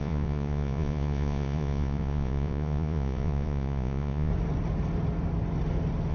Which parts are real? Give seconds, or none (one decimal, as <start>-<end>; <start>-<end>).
4.3-6.1